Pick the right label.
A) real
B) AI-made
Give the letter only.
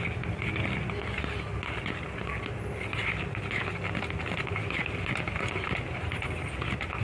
A